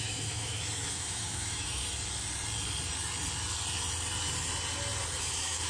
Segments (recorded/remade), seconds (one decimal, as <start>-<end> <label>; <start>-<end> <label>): 0.0-1.8 remade; 1.8-5.2 recorded; 5.2-5.7 remade